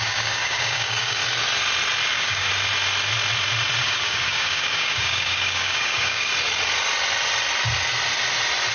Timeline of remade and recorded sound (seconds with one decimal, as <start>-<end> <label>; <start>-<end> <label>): 0.0-1.2 remade; 1.2-2.1 recorded; 2.1-2.5 remade; 2.5-3.8 recorded; 3.8-6.3 remade; 6.3-8.7 recorded